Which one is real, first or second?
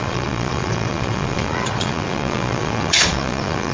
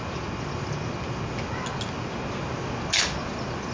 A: second